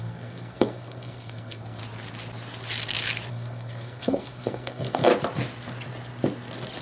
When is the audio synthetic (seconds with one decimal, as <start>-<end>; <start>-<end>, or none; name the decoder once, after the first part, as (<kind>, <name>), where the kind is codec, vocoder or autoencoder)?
0.0-1.8 (codec, SNAC); 3.3-5.1

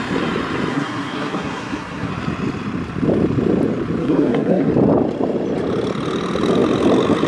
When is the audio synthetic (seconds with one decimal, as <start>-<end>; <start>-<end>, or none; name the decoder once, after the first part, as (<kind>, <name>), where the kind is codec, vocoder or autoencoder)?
0.7-2.1 (codec, SNAC); 4.0-4.7